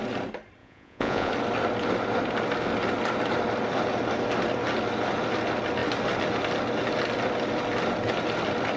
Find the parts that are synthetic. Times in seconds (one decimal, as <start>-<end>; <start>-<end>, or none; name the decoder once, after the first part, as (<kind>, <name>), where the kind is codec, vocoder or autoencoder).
0.6-1.3 (vocoder, Vocos)